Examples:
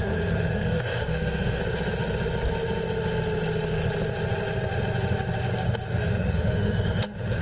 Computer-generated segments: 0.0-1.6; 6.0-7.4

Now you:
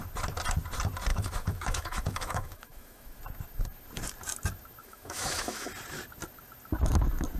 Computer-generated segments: 1.1-3.2; 4.8-5.7